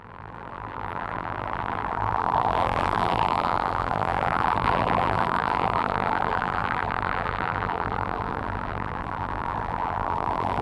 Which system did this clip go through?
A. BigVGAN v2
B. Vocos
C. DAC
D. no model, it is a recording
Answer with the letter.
A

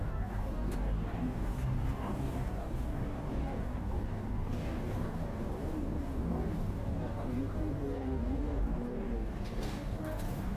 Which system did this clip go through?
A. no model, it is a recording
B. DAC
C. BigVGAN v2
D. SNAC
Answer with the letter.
B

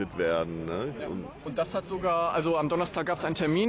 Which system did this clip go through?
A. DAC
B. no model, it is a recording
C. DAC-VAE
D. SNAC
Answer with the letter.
B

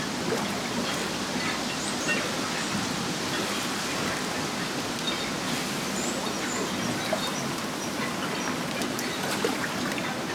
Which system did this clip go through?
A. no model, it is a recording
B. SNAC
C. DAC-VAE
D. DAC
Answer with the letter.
A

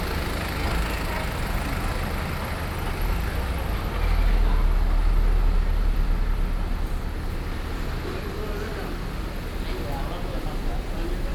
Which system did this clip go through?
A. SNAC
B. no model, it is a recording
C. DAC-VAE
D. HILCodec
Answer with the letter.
B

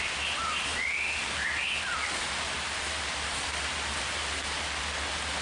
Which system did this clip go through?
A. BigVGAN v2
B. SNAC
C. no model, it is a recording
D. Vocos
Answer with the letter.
C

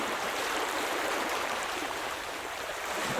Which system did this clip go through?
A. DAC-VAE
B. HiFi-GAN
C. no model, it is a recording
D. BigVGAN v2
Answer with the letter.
D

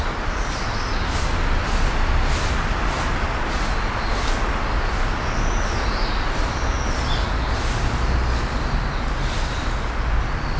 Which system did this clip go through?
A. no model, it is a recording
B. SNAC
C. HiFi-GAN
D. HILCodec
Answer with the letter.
A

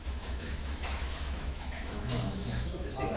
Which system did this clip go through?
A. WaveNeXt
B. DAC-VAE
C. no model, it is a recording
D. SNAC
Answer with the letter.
B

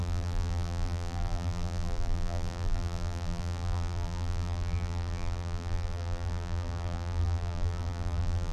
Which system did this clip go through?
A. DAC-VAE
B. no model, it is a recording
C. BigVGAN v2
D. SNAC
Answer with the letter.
C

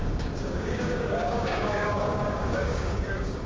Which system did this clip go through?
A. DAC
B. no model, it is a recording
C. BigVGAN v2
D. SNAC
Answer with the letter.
A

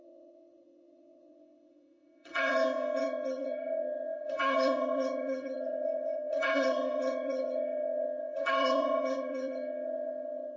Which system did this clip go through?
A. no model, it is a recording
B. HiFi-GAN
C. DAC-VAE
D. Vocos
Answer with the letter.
B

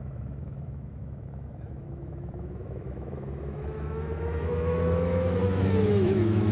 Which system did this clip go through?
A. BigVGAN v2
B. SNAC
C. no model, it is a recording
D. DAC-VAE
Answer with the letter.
D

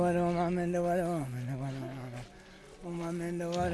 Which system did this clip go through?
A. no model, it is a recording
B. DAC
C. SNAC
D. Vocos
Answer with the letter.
A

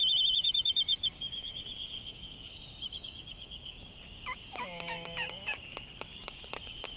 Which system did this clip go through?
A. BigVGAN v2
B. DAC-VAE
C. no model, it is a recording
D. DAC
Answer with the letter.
D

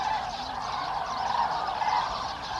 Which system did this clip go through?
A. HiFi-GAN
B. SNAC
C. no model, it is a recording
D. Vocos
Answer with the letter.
C